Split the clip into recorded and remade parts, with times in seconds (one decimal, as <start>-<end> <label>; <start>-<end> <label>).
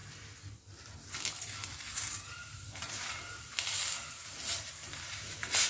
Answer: 0.0-1.9 recorded; 1.9-3.2 remade; 3.2-4.2 recorded; 4.2-5.7 remade